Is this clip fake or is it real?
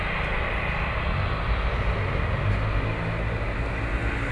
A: real